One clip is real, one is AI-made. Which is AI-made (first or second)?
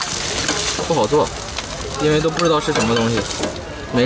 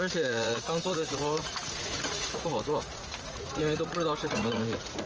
second